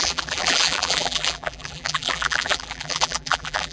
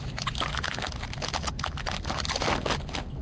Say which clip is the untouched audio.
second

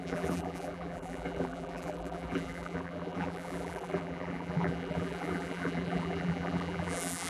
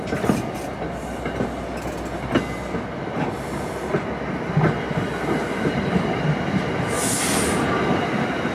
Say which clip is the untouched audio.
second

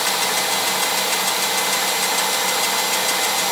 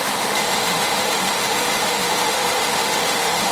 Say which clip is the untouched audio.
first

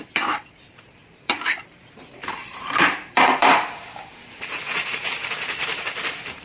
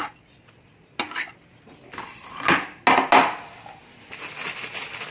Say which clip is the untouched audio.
second